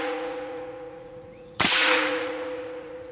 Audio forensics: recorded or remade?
remade